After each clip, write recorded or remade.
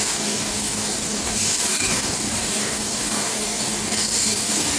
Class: remade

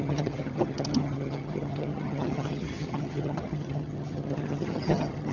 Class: remade